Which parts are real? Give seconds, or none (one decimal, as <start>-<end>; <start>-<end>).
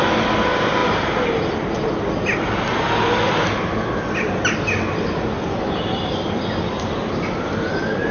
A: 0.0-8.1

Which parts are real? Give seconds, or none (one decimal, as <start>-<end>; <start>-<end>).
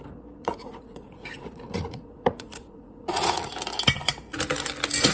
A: 0.0-0.4; 3.5-5.1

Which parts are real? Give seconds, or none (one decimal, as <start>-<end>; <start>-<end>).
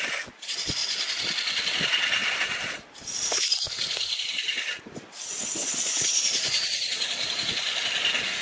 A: 0.0-5.6; 7.5-8.4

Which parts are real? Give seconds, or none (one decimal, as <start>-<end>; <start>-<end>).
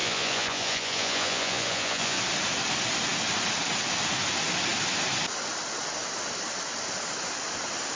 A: 2.2-7.9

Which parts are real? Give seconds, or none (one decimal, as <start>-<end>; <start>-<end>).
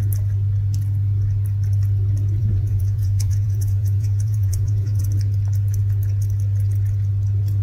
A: 0.0-2.4; 5.0-7.6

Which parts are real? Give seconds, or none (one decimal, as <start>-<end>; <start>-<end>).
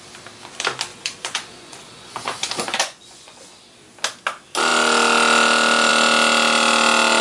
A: 0.0-0.9; 3.5-7.2